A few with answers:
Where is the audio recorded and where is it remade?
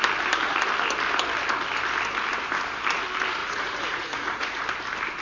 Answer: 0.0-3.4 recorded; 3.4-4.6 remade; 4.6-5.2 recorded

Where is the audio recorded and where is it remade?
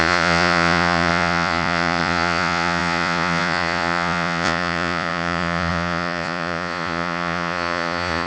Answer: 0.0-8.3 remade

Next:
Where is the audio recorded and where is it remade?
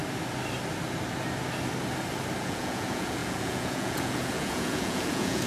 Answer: 0.0-2.4 recorded; 2.4-5.5 remade